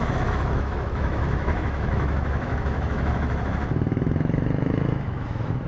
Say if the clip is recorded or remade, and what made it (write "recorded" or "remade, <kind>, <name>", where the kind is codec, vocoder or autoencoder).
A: remade, autoencoder, DAC-VAE